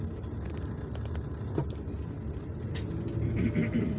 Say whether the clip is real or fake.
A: real